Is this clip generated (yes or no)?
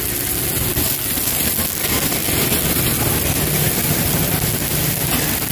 no